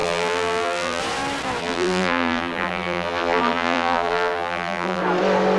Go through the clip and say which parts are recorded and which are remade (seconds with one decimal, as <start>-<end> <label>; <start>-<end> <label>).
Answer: 0.0-1.0 remade; 1.0-1.6 recorded; 1.6-5.0 remade; 5.0-5.6 recorded